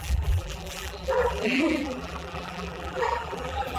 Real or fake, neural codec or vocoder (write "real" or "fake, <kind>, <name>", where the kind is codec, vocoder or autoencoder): fake, vocoder, BigVGAN v2